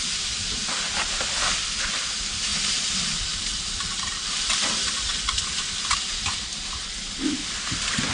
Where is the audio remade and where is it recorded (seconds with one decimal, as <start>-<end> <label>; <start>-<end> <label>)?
0.0-2.5 recorded; 2.5-7.0 remade; 7.0-8.1 recorded